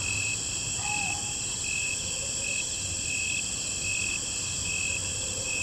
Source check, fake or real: fake